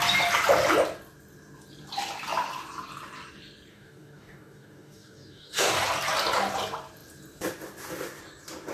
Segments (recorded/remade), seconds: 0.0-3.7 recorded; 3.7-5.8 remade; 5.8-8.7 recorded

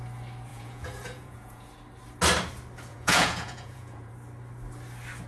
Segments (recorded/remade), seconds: 0.0-0.5 recorded; 0.5-1.7 remade; 1.7-2.9 recorded; 2.9-4.1 remade; 4.1-5.3 recorded

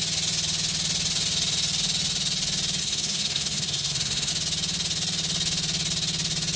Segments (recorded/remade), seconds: 0.0-2.8 recorded; 2.8-4.3 remade; 4.3-6.6 recorded

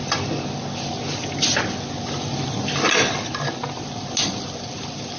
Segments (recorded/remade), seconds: 0.0-5.2 recorded

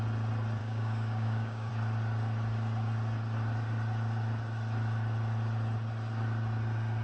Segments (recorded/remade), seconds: 0.0-0.6 recorded; 0.6-1.7 remade; 1.7-7.0 recorded

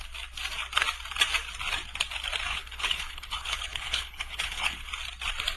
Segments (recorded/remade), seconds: 0.0-2.5 recorded; 2.5-4.9 remade; 4.9-5.6 recorded